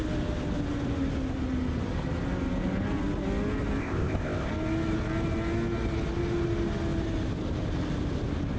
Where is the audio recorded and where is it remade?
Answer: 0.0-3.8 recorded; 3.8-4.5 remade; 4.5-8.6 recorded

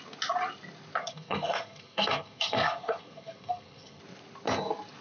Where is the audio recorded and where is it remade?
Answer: 0.0-1.0 recorded; 1.0-4.0 remade; 4.0-5.0 recorded